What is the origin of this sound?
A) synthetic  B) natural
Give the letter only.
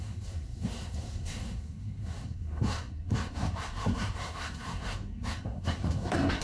A